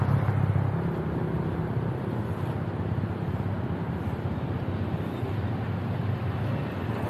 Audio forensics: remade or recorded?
recorded